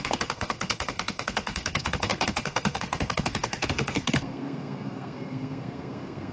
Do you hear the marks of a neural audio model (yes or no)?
yes